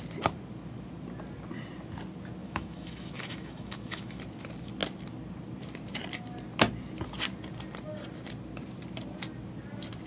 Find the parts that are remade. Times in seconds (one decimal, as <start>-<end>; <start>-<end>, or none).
2.4-4.2